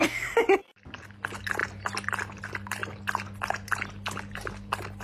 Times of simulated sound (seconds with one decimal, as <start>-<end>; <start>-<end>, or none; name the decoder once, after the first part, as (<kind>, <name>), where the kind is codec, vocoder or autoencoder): none

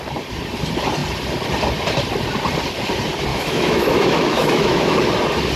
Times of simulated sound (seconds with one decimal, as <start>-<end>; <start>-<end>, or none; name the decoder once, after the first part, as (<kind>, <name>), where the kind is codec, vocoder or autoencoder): 3.3-5.0 (autoencoder, DAC-VAE)

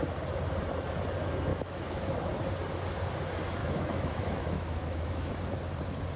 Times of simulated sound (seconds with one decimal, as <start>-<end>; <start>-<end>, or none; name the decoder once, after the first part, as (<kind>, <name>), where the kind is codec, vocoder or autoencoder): 1.5-2.4 (autoencoder, DAC-VAE); 3.6-5.3